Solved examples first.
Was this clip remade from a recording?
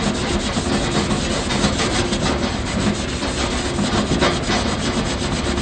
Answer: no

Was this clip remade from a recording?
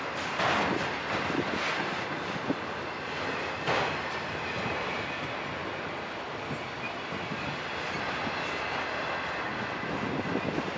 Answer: no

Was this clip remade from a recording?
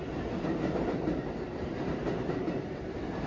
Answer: no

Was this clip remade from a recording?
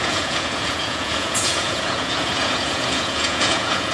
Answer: yes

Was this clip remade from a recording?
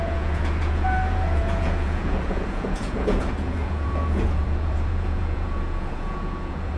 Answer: yes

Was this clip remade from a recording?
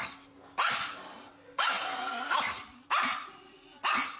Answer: no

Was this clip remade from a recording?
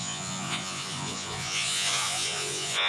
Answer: yes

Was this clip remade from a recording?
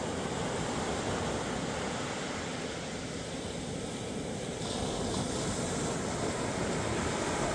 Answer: no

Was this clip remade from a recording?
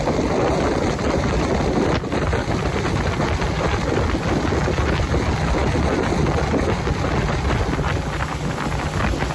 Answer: no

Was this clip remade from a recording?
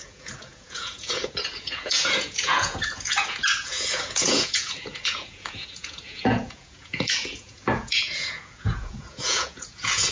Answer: yes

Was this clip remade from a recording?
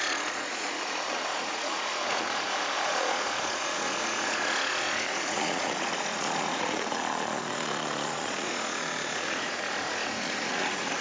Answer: yes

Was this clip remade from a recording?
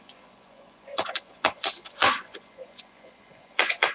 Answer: yes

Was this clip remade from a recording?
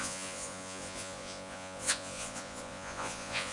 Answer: yes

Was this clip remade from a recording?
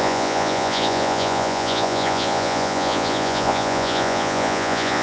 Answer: yes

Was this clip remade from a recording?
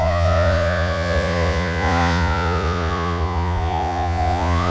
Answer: yes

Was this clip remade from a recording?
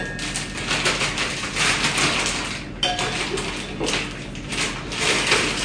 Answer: no